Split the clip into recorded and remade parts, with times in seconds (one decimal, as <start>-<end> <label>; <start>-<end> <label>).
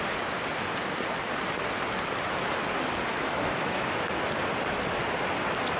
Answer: 0.0-3.1 recorded; 3.1-4.1 remade; 4.1-5.8 recorded